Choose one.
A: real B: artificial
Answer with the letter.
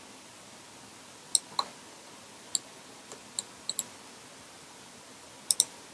A